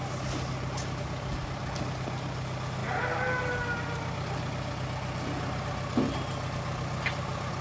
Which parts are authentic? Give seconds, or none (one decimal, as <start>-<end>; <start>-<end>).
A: 0.0-7.6